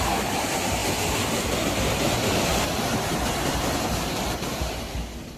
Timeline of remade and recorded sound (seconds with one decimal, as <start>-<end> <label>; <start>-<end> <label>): 0.0-2.5 recorded; 2.5-4.7 remade; 4.7-5.4 recorded